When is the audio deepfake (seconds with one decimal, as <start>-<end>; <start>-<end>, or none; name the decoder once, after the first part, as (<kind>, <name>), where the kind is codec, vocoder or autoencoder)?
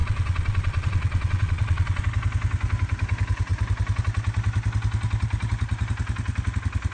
0.0-2.0 (vocoder, Vocos)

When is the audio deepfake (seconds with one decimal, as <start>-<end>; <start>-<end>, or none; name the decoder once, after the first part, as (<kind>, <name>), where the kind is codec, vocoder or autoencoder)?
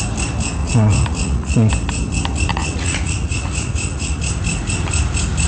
0.6-1.7 (vocoder, Vocos); 2.5-4.2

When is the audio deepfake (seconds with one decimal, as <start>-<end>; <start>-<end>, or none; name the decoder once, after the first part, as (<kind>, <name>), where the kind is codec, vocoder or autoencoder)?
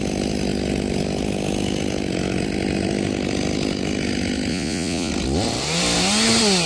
4.5-5.1 (vocoder, Vocos)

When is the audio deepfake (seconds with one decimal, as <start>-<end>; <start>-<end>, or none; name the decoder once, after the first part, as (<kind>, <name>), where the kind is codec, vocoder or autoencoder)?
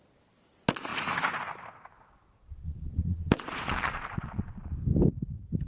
2.4-4.7 (vocoder, Vocos)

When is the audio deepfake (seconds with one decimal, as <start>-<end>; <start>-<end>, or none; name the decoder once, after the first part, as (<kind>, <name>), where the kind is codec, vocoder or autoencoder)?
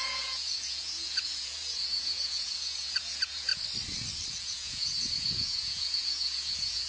0.0-3.5 (vocoder, Vocos); 4.3-6.9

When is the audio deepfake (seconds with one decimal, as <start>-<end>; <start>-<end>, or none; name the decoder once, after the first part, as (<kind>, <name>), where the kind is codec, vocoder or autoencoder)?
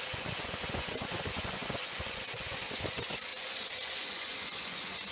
0.0-5.1 (vocoder, Vocos)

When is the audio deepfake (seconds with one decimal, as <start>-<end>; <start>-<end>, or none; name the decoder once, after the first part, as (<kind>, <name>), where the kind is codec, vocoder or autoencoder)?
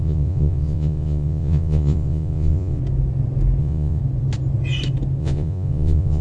0.0-2.8 (vocoder, Vocos); 3.6-4.0; 5.2-6.2